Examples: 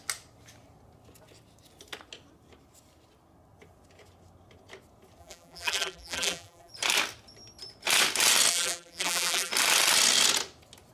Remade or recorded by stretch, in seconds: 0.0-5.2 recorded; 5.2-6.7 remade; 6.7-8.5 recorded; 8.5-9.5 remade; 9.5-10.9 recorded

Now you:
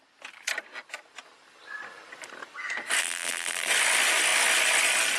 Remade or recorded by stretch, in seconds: 0.0-3.0 recorded; 3.0-3.7 remade; 3.7-5.2 recorded

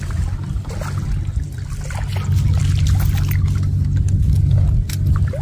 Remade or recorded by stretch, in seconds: 0.0-5.4 recorded

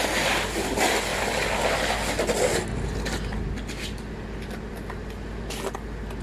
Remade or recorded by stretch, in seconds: 0.0-6.2 recorded

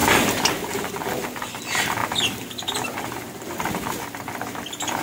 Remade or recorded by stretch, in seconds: 0.0-5.0 recorded

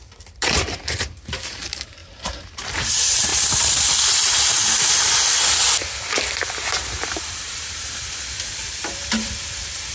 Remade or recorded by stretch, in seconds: 0.0-3.3 remade; 3.3-6.5 recorded; 6.5-9.9 remade

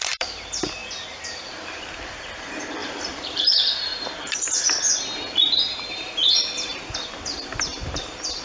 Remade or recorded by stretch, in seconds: 0.0-0.8 remade; 0.8-1.4 recorded; 1.4-3.9 remade; 3.9-8.0 recorded; 8.0-8.4 remade